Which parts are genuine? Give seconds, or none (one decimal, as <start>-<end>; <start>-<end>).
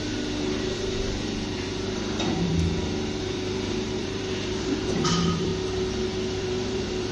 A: 2.5-3.2; 5.5-6.4